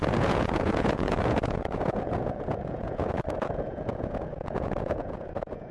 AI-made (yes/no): yes